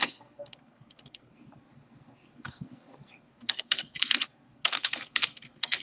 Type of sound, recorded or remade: remade